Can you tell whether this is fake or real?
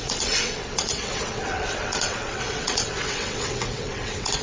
fake